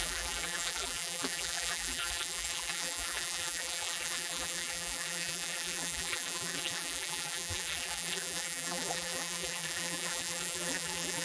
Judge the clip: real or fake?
fake